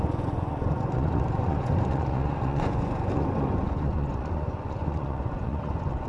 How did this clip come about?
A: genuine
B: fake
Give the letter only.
B